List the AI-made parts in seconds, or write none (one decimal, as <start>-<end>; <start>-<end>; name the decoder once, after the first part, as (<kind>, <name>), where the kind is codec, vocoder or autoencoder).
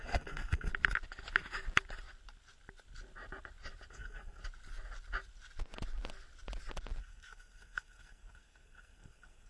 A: 0.0-0.7 (codec, SNAC); 3.9-4.4; 7.0-9.5